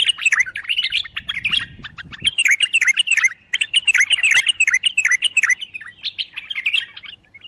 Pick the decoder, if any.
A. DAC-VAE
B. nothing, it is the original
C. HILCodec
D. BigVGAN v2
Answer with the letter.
B